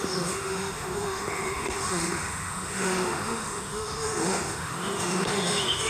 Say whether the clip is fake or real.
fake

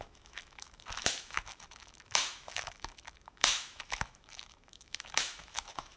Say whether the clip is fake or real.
fake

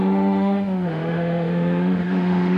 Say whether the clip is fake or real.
fake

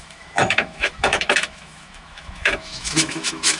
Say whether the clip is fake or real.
fake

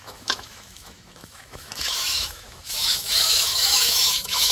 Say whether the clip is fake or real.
fake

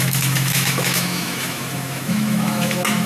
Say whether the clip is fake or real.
fake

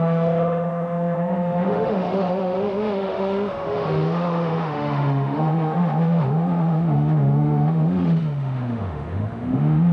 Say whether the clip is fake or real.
fake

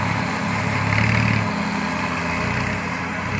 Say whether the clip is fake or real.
real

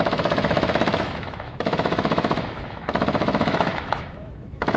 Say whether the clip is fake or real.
fake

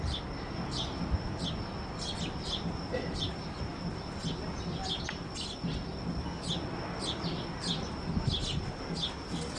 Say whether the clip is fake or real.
real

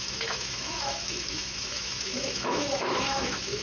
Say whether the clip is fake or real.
fake